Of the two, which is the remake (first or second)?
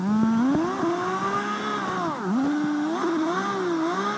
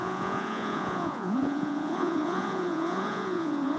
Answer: second